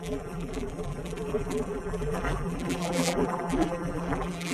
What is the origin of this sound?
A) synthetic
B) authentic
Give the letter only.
A